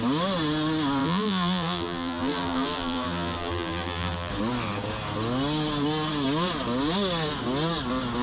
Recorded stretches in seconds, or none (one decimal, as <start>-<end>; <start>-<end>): 0.0-1.0; 4.3-8.2